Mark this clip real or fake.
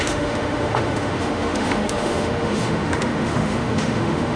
fake